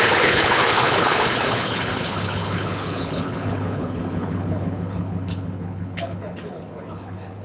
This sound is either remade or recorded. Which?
remade